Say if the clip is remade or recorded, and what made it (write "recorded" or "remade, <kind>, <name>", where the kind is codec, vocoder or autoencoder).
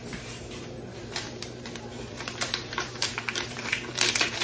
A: remade, vocoder, BigVGAN v2